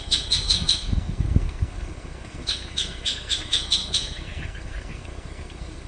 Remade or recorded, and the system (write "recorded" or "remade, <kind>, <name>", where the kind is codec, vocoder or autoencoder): remade, codec, SNAC